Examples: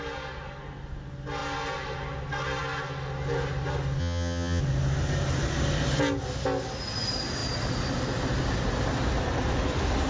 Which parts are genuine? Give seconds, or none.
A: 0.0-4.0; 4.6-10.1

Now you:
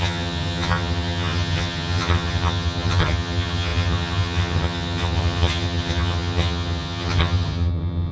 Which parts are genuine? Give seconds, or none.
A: none

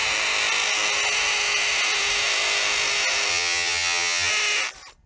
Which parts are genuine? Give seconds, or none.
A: 0.0-3.3; 4.3-5.1

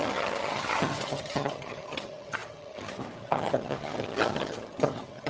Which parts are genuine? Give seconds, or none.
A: none

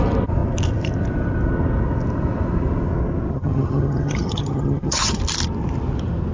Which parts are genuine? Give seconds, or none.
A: 0.0-3.3; 5.2-6.3

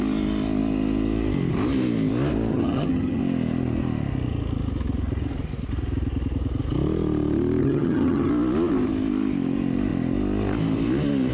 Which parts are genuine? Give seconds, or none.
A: 0.0-2.5; 3.2-7.6; 8.3-11.3

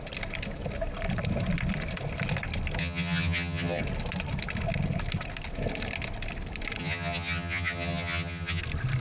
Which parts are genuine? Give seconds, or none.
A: 0.0-2.8; 3.8-6.8; 8.6-9.0

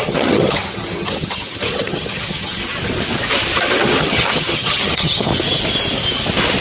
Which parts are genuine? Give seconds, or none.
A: 2.6-4.0; 5.3-6.6